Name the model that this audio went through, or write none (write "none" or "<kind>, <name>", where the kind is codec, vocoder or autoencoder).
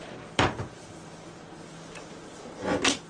none